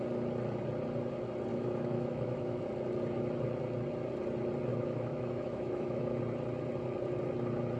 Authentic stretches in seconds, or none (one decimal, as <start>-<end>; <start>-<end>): 0.0-1.5; 2.6-4.7; 6.2-7.8